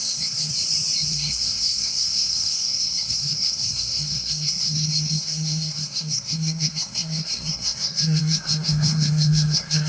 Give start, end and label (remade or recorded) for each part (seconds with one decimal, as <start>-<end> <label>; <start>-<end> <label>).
0.0-0.5 remade; 0.5-1.1 recorded; 1.1-9.9 remade